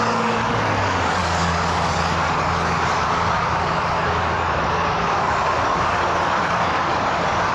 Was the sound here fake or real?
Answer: fake